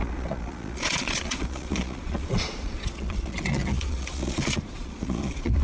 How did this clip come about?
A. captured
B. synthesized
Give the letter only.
B